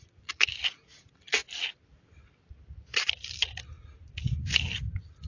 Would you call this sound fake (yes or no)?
no